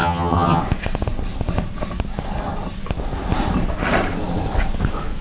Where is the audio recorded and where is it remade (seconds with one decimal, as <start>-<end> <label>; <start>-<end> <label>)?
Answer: 0.0-0.6 remade; 0.6-5.2 recorded